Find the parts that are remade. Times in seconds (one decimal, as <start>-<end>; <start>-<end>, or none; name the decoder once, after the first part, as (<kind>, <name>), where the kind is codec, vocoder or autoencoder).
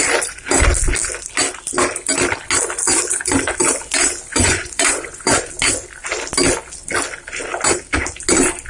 4.3-5.5 (vocoder, Vocos)